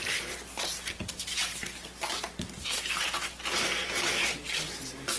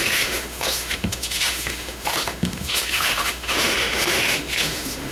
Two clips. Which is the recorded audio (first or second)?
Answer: first